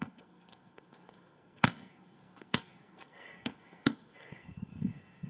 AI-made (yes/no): yes